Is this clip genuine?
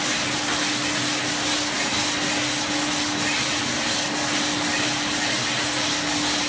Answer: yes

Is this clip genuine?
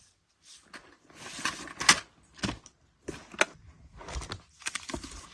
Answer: yes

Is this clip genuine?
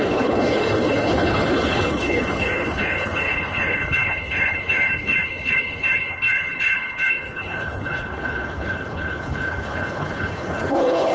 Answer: no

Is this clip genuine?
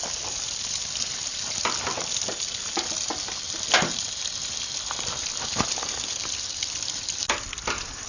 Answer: yes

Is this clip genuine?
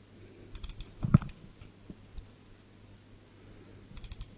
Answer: yes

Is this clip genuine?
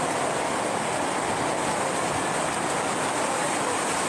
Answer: yes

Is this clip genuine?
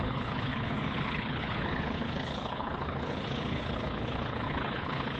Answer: no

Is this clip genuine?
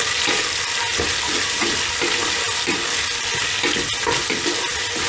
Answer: yes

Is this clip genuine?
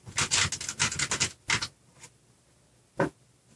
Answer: yes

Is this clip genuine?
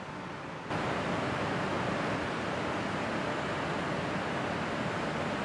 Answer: yes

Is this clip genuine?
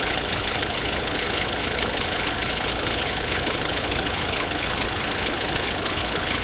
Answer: no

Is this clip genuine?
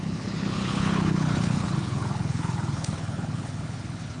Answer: no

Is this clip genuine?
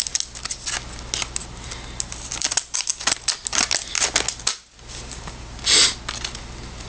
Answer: yes